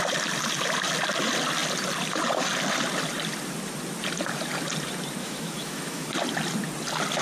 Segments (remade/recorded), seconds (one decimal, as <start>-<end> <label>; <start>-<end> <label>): 0.0-5.2 recorded; 5.2-6.1 remade; 6.1-7.2 recorded